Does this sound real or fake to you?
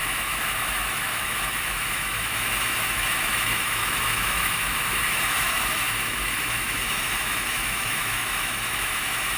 fake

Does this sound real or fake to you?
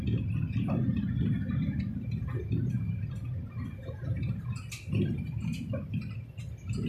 real